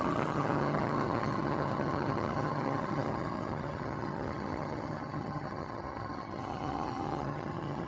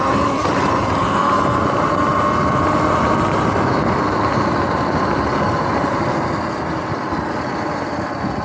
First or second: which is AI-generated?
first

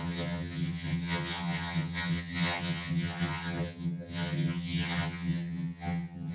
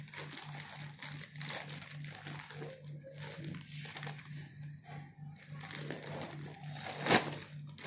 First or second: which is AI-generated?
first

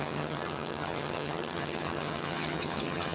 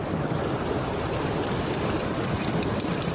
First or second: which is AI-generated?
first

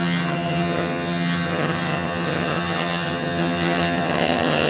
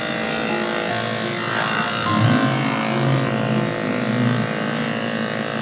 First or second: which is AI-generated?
first